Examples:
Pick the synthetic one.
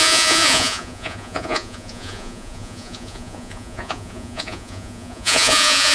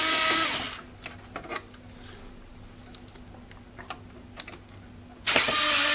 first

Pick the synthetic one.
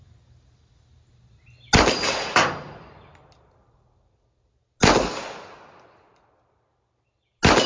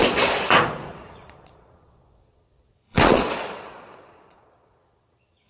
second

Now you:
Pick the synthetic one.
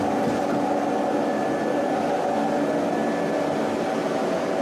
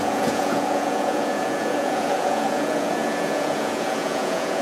second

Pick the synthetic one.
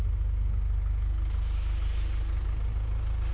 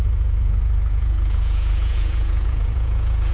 second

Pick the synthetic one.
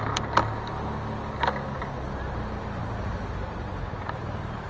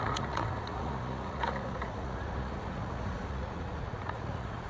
second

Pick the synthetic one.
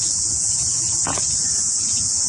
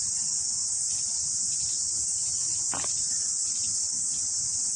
first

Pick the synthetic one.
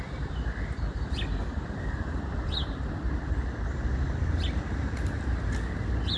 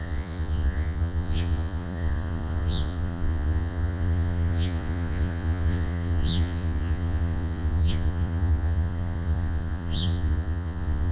second